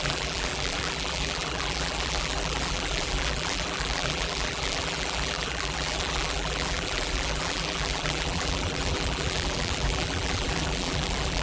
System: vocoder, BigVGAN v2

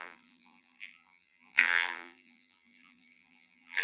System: vocoder, BigVGAN v2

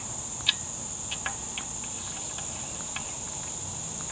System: none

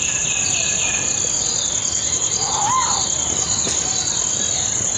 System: vocoder, BigVGAN v2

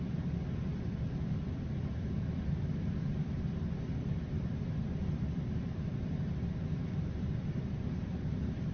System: vocoder, BigVGAN v2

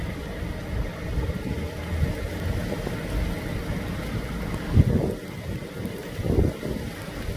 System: none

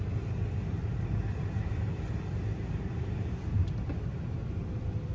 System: vocoder, BigVGAN v2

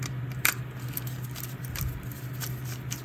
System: none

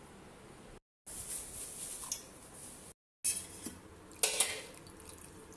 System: none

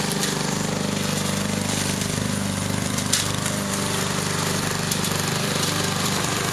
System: vocoder, BigVGAN v2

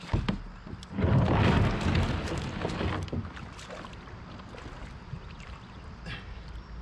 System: none